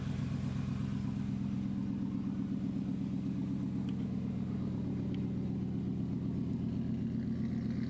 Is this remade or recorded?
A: recorded